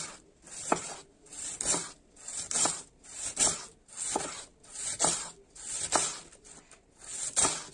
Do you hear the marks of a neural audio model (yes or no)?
no